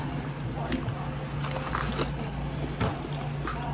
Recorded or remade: recorded